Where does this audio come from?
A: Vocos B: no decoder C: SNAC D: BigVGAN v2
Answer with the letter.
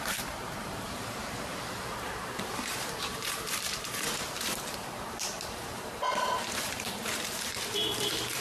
D